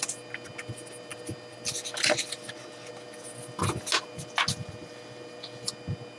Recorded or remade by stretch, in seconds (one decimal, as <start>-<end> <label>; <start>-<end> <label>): 0.0-6.2 recorded